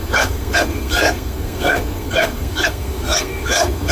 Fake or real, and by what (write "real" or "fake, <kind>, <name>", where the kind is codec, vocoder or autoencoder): fake, codec, SNAC